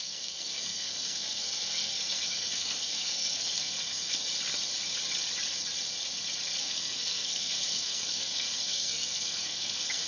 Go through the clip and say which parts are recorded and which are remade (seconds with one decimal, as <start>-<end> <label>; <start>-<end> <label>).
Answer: 0.0-4.2 remade; 4.2-6.6 recorded; 6.6-10.1 remade